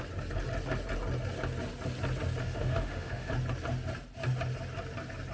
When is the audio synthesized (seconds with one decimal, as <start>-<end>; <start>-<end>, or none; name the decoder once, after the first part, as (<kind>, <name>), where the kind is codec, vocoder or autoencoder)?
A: 2.4-3.3 (autoencoder, DAC-VAE)